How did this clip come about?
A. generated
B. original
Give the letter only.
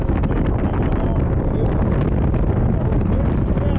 B